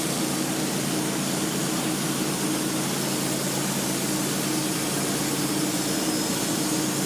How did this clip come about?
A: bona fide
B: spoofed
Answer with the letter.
A